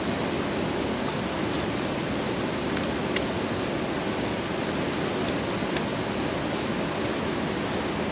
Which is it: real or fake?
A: real